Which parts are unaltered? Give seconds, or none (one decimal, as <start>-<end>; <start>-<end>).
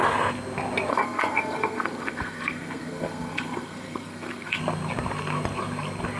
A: 0.0-0.9; 4.6-6.2